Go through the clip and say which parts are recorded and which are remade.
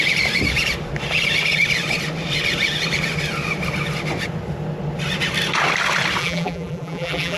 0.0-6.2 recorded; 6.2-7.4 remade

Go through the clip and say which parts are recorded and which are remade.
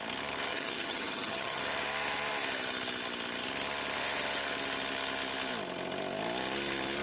0.0-0.5 recorded; 0.5-1.6 remade; 1.6-7.0 recorded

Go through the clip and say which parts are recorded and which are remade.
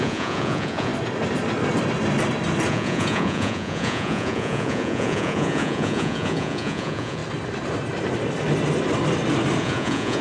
0.0-0.9 remade; 0.9-2.7 recorded; 2.7-7.2 remade; 7.2-9.6 recorded; 9.6-10.2 remade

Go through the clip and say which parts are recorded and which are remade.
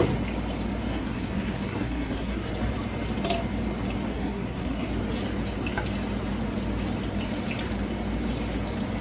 0.0-0.9 recorded; 0.9-2.5 remade; 2.5-4.1 recorded; 4.1-4.9 remade; 4.9-9.0 recorded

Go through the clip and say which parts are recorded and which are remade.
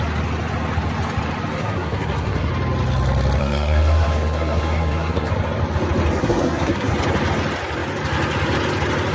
0.0-1.6 recorded; 1.6-2.5 remade; 2.5-3.4 recorded; 3.4-5.3 remade; 5.3-6.2 recorded; 6.2-6.9 remade; 6.9-9.1 recorded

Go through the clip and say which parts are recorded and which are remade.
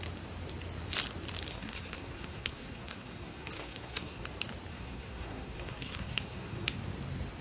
0.0-1.5 recorded; 1.5-4.2 remade; 4.2-4.7 recorded; 4.7-6.8 remade; 6.8-7.4 recorded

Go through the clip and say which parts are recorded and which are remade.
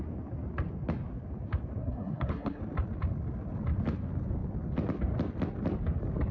0.0-1.8 recorded; 1.8-2.6 remade; 2.6-6.3 recorded